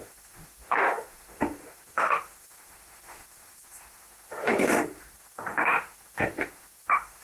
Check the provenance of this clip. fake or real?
fake